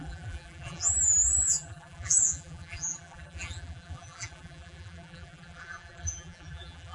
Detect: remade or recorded remade